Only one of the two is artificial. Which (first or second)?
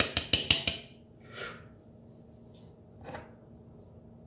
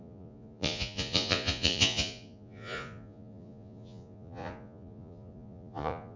second